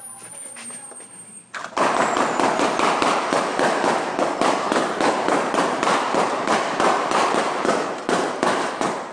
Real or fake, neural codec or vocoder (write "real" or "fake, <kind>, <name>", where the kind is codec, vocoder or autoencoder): fake, vocoder, BigVGAN v2